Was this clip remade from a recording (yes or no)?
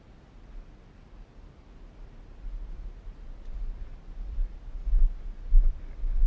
no